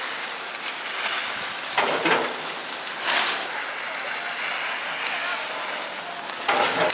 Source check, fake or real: real